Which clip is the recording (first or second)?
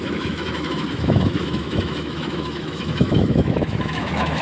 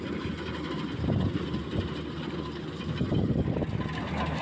second